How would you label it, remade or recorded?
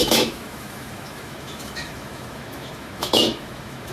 remade